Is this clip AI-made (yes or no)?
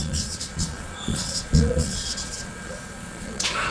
yes